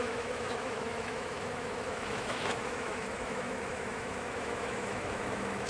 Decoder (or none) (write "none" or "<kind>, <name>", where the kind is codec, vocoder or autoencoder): autoencoder, DAC-VAE